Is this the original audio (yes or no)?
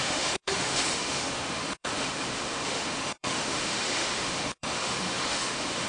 no